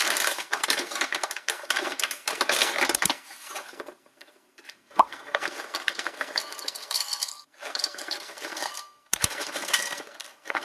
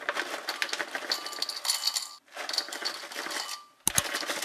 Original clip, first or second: second